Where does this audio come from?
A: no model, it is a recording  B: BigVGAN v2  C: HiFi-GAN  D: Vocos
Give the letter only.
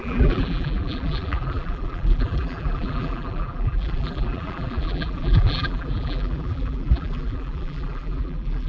B